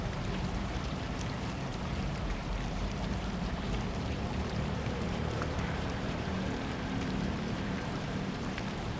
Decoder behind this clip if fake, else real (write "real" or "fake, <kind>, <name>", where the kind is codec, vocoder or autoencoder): fake, vocoder, BigVGAN v2